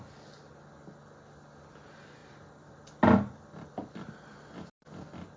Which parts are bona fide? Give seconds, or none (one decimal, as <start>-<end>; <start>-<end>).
0.0-2.2